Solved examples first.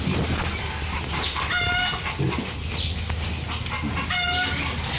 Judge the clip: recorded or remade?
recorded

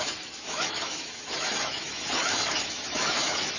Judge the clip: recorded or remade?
remade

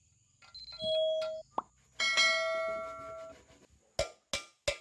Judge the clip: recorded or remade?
recorded